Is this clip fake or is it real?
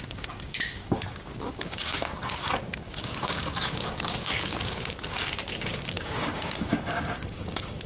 fake